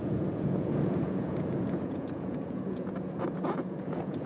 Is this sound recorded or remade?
remade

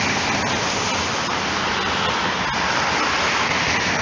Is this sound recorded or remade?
recorded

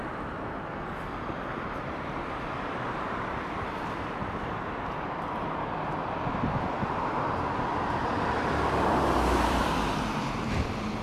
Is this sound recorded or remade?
remade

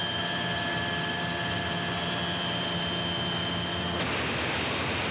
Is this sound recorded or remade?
recorded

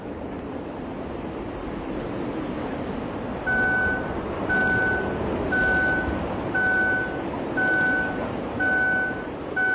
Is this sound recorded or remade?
recorded